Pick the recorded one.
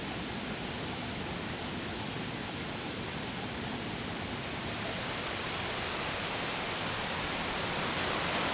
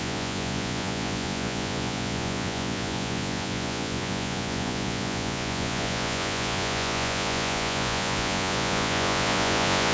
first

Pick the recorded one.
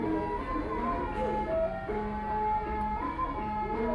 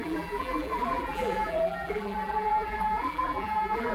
first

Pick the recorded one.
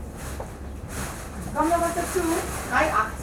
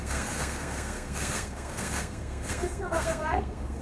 first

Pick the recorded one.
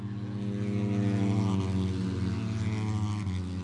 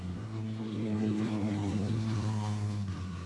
first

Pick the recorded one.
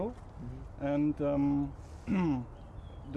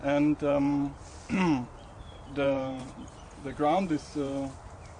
first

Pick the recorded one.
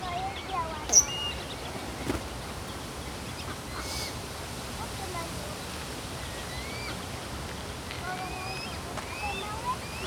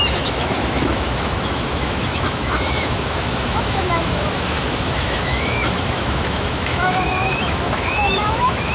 first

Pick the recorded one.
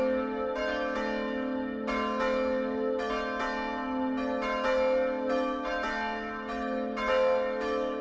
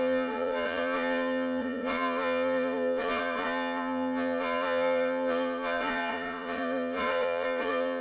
first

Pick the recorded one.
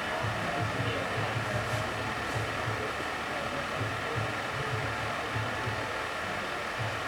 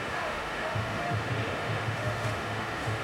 first